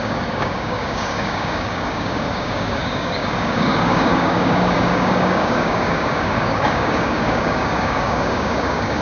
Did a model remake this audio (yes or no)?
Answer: yes